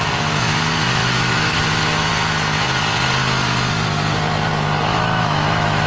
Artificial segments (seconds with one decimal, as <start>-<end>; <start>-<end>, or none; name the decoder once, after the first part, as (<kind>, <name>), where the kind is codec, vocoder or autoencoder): 0.0-2.1 (autoencoder, DAC-VAE); 4.8-5.9